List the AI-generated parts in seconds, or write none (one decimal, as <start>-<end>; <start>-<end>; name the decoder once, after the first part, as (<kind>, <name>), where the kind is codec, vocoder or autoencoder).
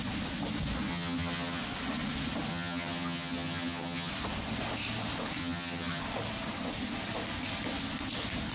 0.9-1.6 (vocoder, HiFi-GAN); 2.5-4.1; 5.4-6.0